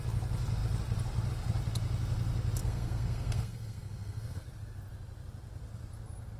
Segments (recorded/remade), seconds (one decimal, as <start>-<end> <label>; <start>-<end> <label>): 0.0-2.6 recorded; 2.6-4.4 remade; 4.4-6.4 recorded